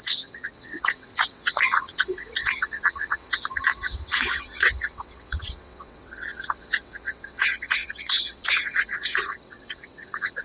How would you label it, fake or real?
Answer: fake